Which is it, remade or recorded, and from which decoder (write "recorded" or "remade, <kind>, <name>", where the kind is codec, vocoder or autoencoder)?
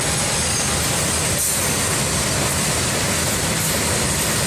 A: recorded